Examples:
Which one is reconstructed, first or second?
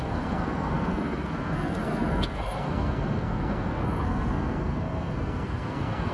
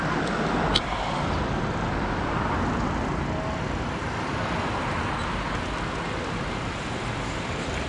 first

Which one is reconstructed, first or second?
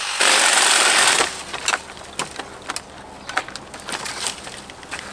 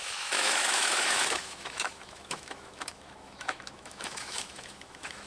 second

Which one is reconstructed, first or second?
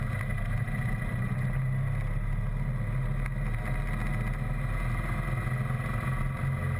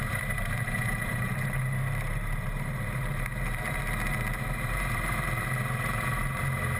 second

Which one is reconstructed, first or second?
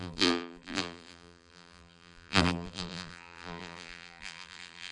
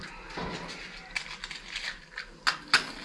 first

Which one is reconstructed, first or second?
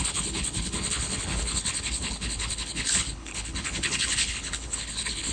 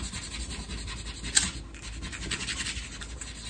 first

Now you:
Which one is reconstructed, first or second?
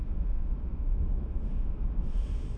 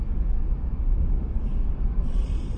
first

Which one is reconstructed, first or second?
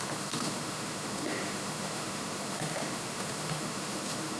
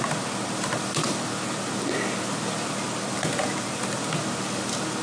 first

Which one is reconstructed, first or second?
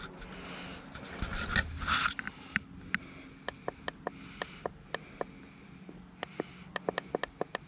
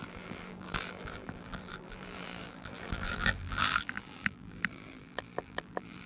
second